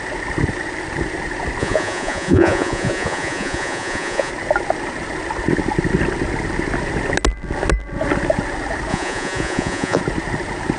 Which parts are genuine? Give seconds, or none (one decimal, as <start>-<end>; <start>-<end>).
0.0-1.6; 4.3-8.9; 10.0-10.8